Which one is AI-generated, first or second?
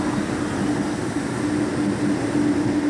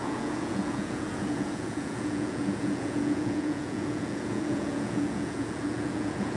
second